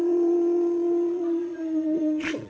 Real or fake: fake